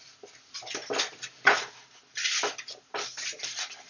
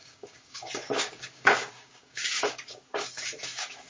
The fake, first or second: second